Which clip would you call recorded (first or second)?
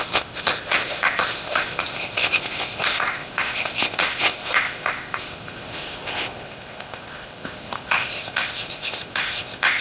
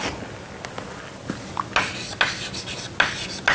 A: second